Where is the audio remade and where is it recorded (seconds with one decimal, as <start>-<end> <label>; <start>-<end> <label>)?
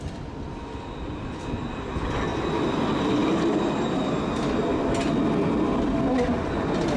0.0-7.0 recorded